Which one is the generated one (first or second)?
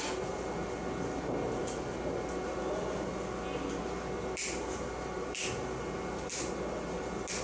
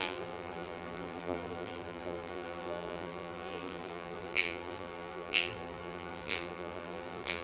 second